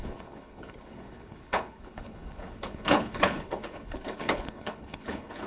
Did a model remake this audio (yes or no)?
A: yes